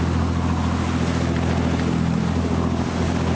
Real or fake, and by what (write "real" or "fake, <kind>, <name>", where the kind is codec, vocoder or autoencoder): real